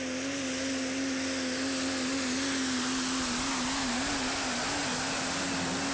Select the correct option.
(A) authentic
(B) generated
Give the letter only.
A